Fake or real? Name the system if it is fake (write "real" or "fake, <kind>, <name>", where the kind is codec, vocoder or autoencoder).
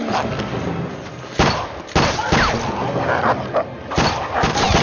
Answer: real